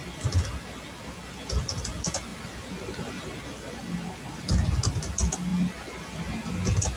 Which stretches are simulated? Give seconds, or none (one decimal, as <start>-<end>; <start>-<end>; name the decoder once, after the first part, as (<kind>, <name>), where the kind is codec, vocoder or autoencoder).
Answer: none